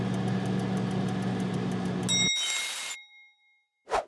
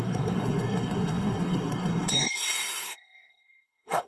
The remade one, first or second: second